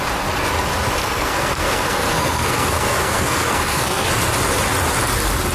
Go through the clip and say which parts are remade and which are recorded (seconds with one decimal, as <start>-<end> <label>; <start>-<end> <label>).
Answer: 0.0-1.0 recorded; 1.0-4.1 remade; 4.1-5.5 recorded